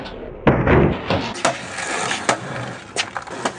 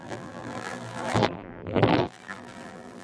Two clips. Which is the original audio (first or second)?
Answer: first